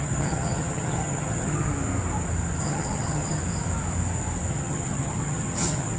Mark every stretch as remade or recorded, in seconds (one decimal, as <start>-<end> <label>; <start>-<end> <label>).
0.0-1.7 remade; 1.7-2.6 recorded; 2.6-3.4 remade; 3.4-4.5 recorded; 4.5-6.0 remade